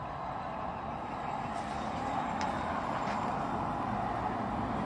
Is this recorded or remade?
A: recorded